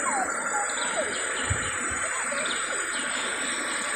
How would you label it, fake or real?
fake